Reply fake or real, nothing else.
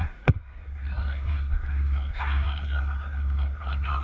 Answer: fake